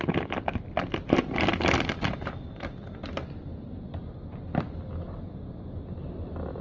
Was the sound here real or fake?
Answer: real